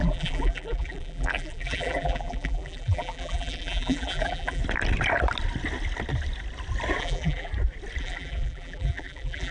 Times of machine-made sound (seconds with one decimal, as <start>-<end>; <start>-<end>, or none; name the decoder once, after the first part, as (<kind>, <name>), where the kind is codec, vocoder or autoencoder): 0.0-4.6 (vocoder, BigVGAN v2); 7.0-7.5; 8.0-9.5